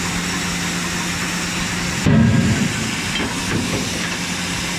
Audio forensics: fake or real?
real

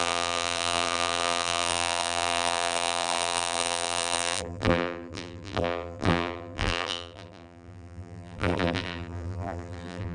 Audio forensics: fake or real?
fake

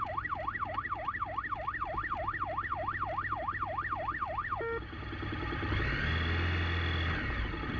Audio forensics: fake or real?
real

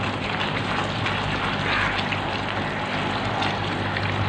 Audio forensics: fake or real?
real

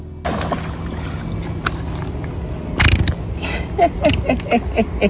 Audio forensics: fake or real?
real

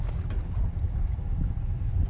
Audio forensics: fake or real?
real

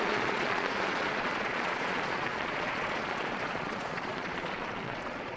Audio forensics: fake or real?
fake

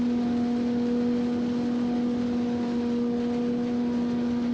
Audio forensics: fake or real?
real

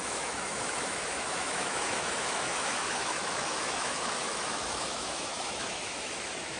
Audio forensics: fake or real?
fake